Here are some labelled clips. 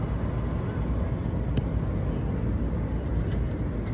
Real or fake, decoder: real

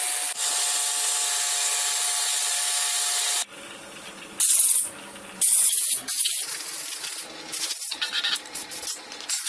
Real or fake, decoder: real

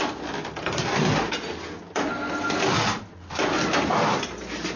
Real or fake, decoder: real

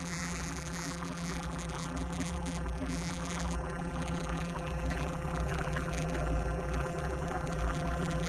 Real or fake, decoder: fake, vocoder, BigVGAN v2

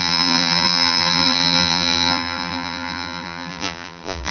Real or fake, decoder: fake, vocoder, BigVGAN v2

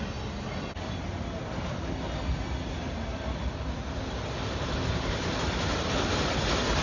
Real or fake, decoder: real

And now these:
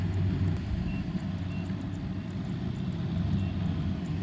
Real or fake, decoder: real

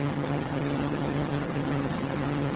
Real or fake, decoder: fake, vocoder, HiFi-GAN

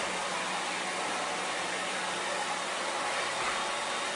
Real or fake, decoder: real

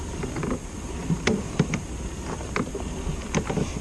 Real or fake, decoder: real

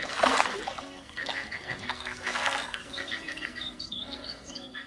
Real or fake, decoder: fake, codec, SNAC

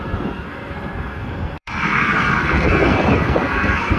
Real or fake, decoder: fake, codec, SNAC